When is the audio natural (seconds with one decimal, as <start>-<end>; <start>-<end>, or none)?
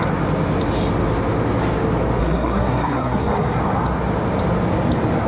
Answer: 0.0-2.2; 3.6-5.3